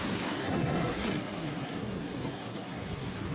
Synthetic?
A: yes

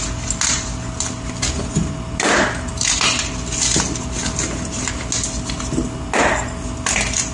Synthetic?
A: no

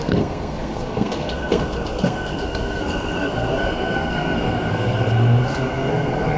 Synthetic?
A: yes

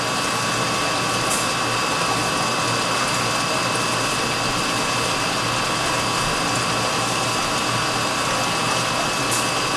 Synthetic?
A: no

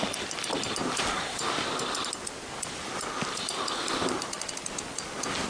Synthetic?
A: no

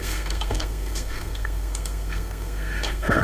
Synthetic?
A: yes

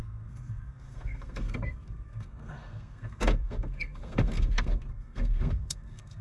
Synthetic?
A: yes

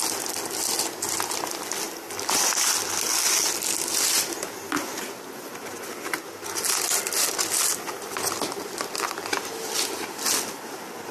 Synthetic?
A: no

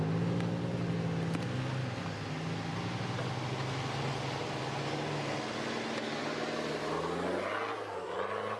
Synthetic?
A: no